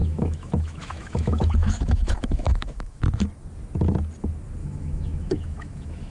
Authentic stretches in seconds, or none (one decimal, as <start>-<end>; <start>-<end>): 3.0-4.6

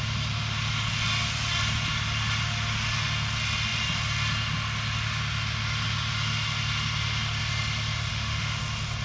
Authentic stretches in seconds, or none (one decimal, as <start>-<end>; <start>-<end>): 0.0-8.1; 8.6-9.0